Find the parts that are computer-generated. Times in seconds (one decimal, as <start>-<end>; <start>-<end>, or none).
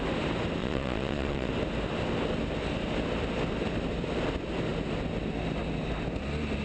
0.6-1.5